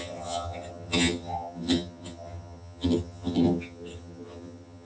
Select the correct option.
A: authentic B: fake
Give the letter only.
B